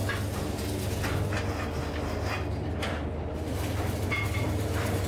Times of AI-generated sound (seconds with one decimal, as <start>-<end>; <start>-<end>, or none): 2.5-5.1

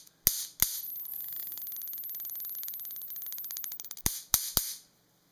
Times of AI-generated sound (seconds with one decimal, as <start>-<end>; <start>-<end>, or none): 1.1-1.6

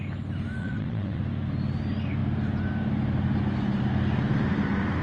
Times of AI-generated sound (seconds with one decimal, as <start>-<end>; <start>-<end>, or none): 0.6-1.2

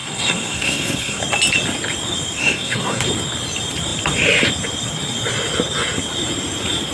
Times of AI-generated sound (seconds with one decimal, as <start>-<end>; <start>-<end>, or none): 0.0-1.2; 2.4-3.0